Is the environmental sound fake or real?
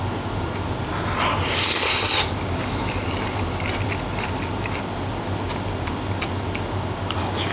real